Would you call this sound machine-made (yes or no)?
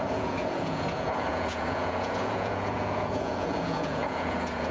yes